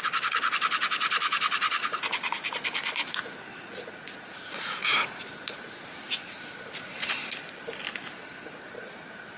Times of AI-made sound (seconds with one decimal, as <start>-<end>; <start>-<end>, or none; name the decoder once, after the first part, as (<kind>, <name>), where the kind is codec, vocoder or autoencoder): 3.5-5.3 (vocoder, Vocos)